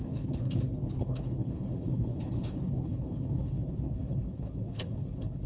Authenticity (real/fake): fake